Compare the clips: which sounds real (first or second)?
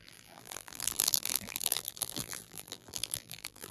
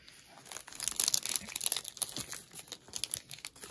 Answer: second